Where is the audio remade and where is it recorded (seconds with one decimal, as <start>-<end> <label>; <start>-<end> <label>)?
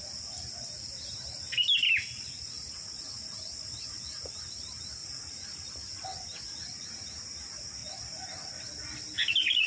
0.0-5.0 recorded; 5.0-5.7 remade; 5.7-7.8 recorded; 7.8-8.5 remade; 8.5-9.7 recorded